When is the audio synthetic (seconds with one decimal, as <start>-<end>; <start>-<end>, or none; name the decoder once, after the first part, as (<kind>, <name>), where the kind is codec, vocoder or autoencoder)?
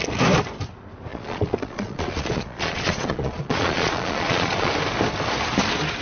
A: 1.1-4.7 (vocoder, Vocos)